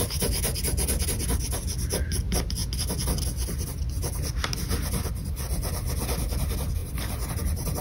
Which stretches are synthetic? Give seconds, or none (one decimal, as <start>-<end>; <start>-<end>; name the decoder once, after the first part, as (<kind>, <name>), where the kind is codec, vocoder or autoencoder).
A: 6.8-7.8 (vocoder, BigVGAN v2)